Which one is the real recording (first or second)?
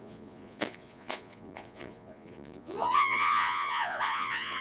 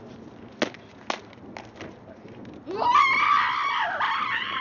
second